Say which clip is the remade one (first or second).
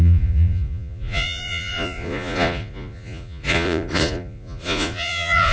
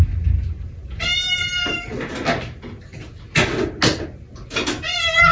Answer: first